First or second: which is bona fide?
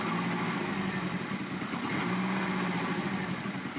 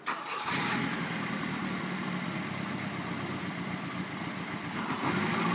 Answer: first